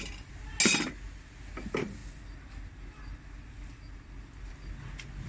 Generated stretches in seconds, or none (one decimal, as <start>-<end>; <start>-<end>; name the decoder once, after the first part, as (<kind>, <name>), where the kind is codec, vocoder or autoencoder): none